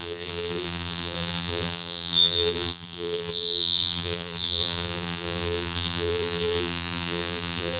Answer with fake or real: fake